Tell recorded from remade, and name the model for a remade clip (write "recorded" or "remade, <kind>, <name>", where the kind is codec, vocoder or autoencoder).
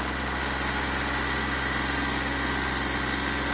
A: recorded